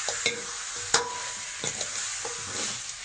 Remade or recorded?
recorded